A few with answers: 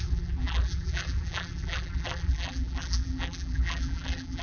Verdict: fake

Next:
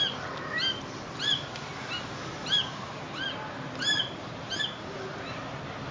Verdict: real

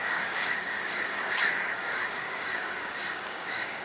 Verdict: fake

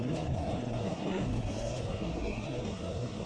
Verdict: fake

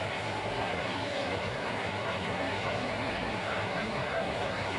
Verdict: fake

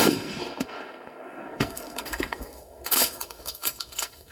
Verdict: fake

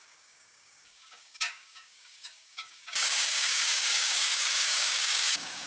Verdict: fake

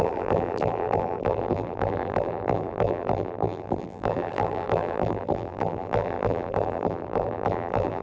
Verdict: fake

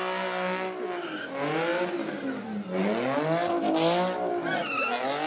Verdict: real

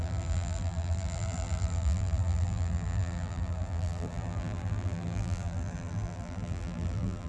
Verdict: fake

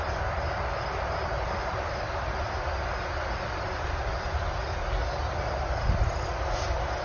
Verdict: real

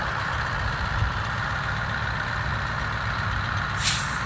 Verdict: real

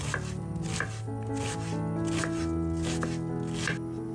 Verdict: real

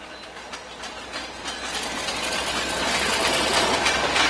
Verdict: real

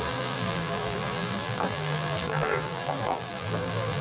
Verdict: fake